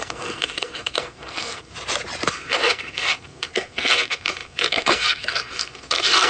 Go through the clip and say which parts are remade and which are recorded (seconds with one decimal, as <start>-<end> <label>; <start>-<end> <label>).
0.0-1.7 remade; 1.7-2.3 recorded; 2.3-6.3 remade